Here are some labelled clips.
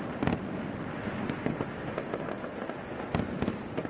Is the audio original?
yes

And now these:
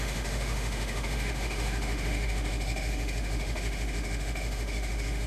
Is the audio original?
no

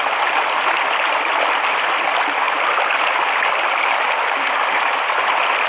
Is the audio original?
yes